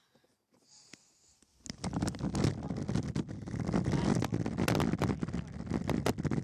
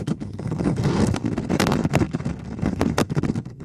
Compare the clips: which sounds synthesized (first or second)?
second